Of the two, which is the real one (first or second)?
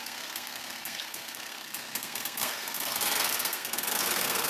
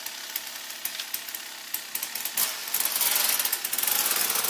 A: second